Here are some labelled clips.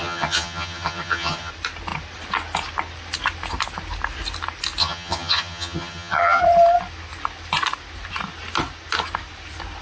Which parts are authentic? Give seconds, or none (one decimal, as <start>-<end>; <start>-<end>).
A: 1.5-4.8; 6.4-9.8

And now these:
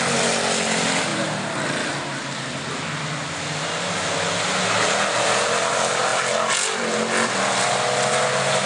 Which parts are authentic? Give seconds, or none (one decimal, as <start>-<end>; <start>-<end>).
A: 0.0-8.7

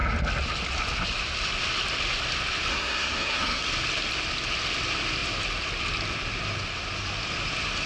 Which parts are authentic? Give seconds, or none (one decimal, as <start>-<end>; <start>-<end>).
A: 0.0-2.7; 3.6-7.9

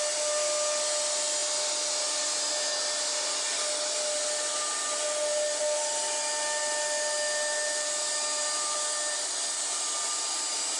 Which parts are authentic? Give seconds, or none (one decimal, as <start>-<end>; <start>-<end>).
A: 0.0-10.8